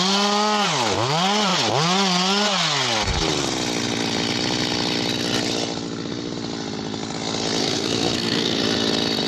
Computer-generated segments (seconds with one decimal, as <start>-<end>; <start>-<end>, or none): 7.6-8.6